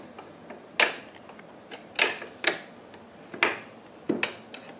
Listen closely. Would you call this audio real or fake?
real